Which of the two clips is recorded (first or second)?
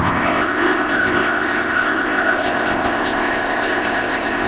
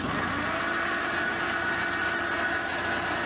second